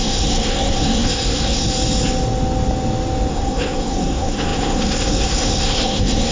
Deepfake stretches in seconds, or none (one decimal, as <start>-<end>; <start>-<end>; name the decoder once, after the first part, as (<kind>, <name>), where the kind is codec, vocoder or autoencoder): 0.0-1.7 (codec, SNAC); 3.3-6.3